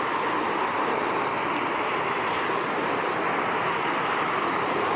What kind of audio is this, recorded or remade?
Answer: recorded